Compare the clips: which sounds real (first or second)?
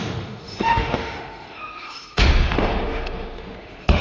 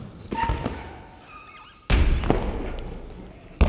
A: second